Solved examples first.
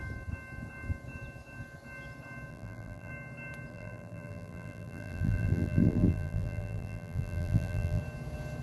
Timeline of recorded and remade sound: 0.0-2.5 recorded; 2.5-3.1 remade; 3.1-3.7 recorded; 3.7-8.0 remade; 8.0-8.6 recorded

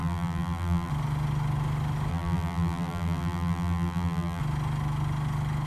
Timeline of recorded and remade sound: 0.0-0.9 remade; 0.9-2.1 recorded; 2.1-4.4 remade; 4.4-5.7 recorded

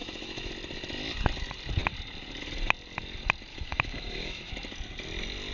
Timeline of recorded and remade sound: 0.0-0.5 remade; 0.5-3.5 recorded; 3.5-4.5 remade; 4.5-5.5 recorded

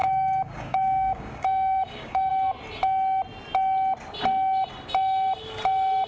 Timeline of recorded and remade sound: 0.0-2.3 remade; 2.3-6.1 recorded